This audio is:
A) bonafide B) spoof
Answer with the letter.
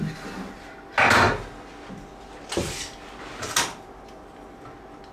A